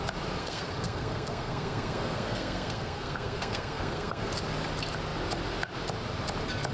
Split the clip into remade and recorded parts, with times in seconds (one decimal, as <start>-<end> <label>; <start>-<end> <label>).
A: 0.0-0.4 recorded; 0.4-4.3 remade; 4.3-6.7 recorded